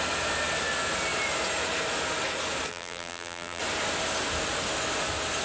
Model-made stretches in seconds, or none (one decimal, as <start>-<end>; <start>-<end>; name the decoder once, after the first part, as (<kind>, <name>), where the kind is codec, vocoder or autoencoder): 2.7-3.6 (vocoder, BigVGAN v2)